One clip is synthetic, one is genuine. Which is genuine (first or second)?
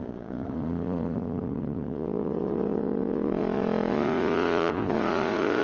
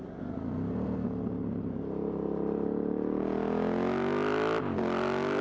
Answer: second